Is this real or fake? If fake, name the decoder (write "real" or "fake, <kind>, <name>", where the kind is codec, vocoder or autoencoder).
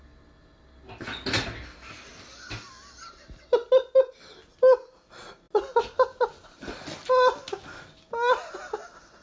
real